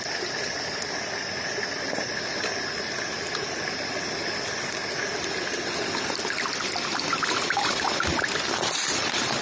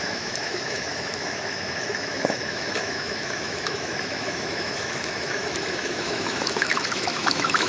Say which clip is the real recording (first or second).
first